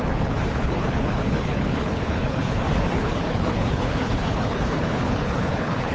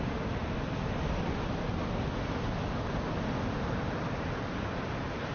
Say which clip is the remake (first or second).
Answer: first